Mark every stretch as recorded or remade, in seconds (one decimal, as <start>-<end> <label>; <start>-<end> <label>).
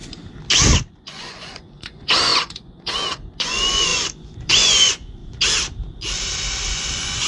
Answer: 0.0-0.9 recorded; 0.9-5.2 remade; 5.2-6.7 recorded; 6.7-7.3 remade